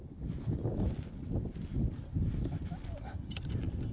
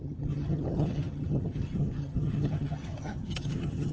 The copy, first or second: second